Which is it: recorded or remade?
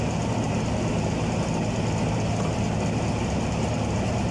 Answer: recorded